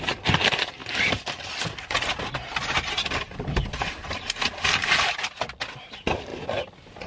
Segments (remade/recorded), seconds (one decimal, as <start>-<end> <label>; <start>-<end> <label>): 0.0-7.1 recorded